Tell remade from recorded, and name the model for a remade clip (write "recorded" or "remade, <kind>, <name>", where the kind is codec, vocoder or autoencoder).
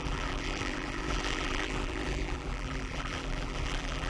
remade, vocoder, BigVGAN v2